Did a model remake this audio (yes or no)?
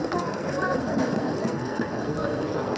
yes